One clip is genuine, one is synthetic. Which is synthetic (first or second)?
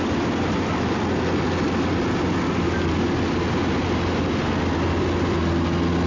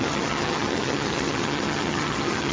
second